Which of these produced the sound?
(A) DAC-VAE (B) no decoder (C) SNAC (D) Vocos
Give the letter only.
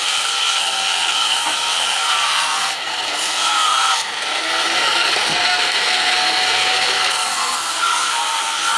C